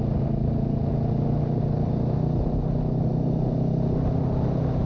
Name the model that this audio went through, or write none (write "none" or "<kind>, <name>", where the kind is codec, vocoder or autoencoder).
none